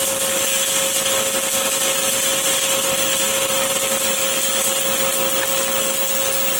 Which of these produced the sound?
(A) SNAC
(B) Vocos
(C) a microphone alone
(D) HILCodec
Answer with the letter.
C